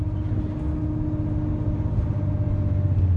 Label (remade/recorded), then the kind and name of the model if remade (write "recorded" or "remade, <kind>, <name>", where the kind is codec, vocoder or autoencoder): recorded